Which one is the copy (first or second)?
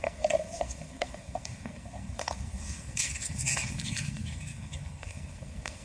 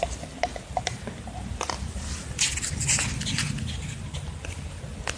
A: first